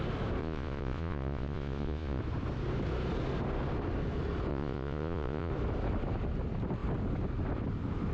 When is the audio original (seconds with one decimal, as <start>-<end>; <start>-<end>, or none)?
0.0-0.4; 2.2-4.5; 5.5-8.1